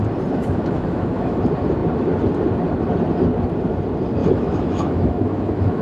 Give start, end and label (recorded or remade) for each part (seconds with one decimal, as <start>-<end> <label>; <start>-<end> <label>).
0.0-0.4 recorded; 0.4-1.4 remade; 1.4-4.2 recorded; 4.2-5.8 remade